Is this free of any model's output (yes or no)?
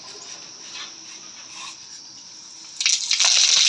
yes